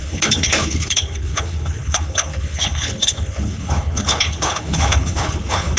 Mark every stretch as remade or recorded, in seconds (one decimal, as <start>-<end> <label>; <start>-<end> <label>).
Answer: 0.0-5.8 remade